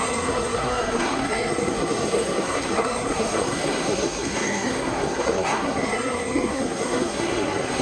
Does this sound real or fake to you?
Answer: fake